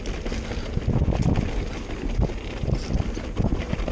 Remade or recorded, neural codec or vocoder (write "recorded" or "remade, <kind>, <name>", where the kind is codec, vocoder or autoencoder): recorded